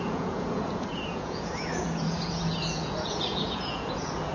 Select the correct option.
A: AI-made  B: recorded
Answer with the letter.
A